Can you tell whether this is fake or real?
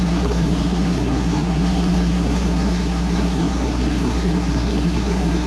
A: fake